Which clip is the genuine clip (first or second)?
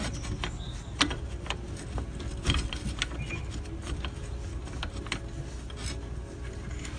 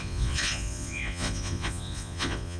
first